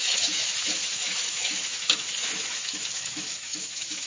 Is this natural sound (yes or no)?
no